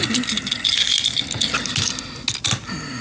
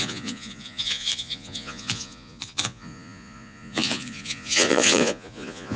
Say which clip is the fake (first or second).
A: second